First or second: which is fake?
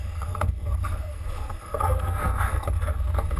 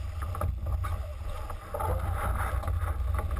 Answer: first